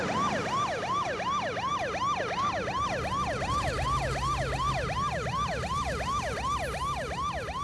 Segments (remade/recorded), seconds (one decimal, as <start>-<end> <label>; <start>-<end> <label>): 0.0-7.6 recorded